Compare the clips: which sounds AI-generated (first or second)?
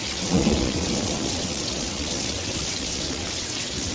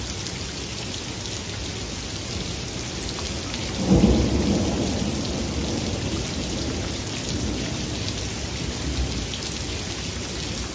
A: first